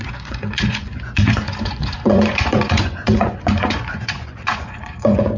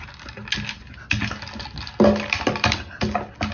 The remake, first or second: first